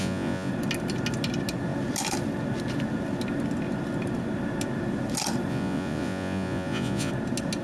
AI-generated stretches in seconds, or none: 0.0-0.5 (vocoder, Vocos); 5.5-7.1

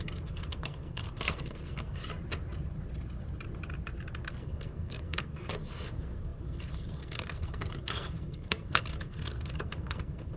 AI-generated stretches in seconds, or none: 0.0-2.0 (codec, SNAC); 4.3-10.4

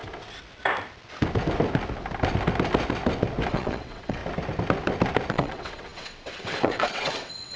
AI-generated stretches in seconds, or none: 3.5-4.2 (vocoder, WaveNeXt); 5.3-7.6

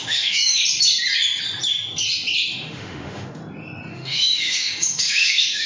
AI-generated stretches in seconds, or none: 0.0-0.6 (autoencoder, DAC-VAE); 2.5-3.4; 3.9-5.7

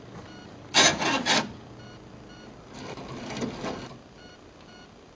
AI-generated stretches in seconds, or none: none

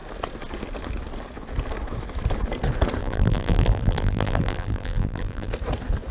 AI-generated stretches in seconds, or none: 3.0-5.5 (vocoder, BigVGAN v2)